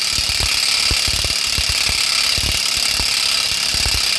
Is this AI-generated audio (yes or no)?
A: no